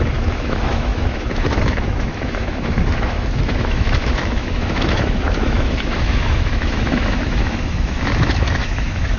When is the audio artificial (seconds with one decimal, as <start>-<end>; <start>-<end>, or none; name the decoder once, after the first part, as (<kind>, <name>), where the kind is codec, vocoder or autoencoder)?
0.0-9.2 (autoencoder, DAC-VAE)